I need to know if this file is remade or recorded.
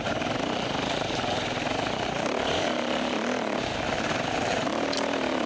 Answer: remade